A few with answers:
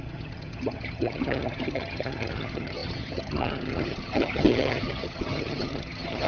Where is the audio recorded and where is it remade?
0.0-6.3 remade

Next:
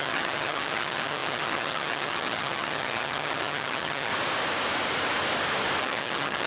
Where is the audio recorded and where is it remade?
0.0-4.1 remade; 4.1-5.8 recorded; 5.8-6.5 remade

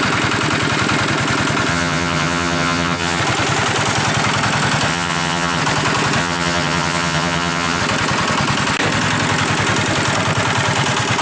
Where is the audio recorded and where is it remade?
0.0-1.7 recorded; 1.7-3.2 remade; 3.2-4.9 recorded; 4.9-5.6 remade; 5.6-6.2 recorded; 6.2-7.8 remade; 7.8-11.2 recorded

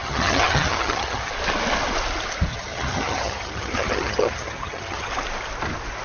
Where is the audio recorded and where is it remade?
0.0-1.3 remade; 1.3-2.5 recorded; 2.5-5.1 remade; 5.1-6.0 recorded

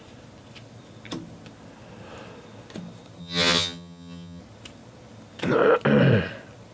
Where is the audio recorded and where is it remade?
0.0-3.2 recorded; 3.2-4.4 remade; 4.4-6.7 recorded

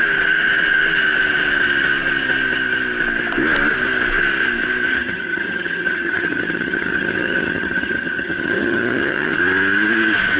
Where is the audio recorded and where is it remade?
0.0-4.9 recorded; 4.9-9.4 remade; 9.4-10.4 recorded

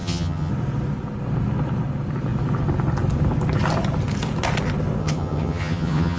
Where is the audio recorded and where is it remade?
0.0-0.5 remade; 0.5-5.0 recorded; 5.0-6.2 remade

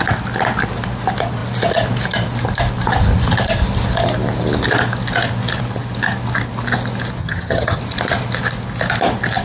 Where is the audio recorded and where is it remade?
0.0-7.2 recorded; 7.2-7.8 remade; 7.8-9.4 recorded